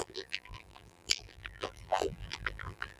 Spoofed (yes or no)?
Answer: yes